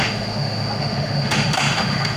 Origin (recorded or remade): remade